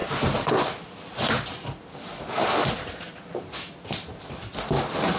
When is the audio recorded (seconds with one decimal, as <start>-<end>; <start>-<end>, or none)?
2.0-2.4; 3.6-5.2